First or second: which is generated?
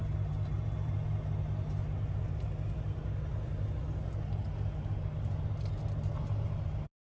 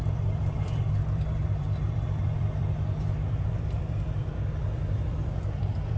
second